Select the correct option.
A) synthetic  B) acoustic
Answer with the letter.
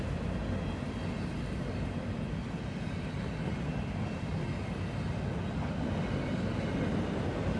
B